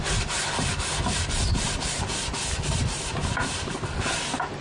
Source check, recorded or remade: recorded